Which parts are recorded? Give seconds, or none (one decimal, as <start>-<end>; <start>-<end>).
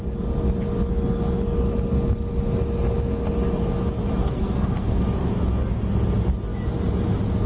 0.0-4.2; 5.0-7.5